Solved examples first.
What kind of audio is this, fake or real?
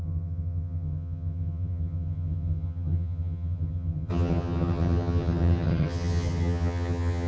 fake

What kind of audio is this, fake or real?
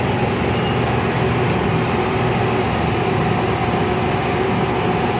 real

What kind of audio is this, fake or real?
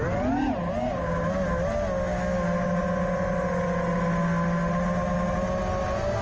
real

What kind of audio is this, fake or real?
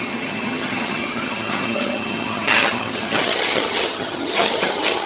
fake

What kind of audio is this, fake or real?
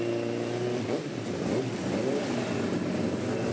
real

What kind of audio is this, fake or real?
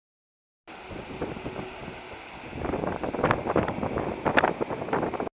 real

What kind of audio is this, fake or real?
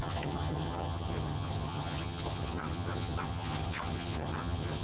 fake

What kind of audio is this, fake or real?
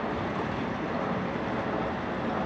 real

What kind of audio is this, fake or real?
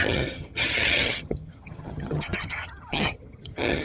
fake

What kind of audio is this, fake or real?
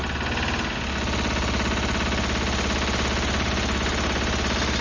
real